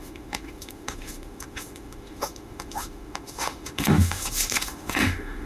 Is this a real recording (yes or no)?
no